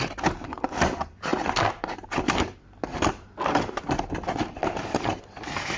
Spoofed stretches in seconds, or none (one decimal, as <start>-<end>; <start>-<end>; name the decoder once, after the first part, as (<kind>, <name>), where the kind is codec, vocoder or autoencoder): none